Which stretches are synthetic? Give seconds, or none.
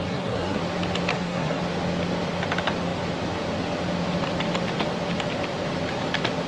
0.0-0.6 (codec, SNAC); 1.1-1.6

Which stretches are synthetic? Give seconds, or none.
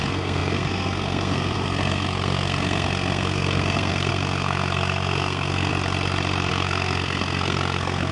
0.0-5.7 (codec, SNAC); 6.5-8.1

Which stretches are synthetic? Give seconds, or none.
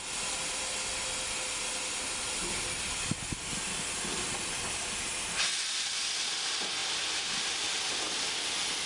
none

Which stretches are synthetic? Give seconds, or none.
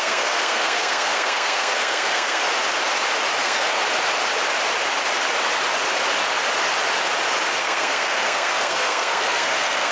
0.0-2.4 (codec, SNAC); 3.4-3.8; 7.6-9.9